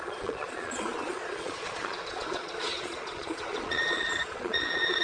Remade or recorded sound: remade